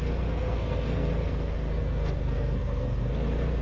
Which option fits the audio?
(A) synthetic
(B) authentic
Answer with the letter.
A